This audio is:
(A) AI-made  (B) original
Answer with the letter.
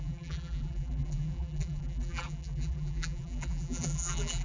A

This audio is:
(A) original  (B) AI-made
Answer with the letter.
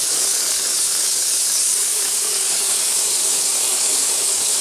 B